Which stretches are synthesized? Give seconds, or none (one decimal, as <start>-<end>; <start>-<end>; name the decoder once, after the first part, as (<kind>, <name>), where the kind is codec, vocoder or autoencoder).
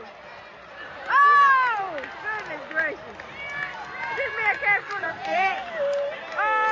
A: 4.8-5.5 (codec, SNAC)